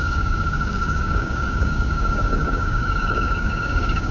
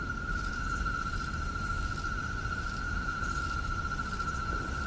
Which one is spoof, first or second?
first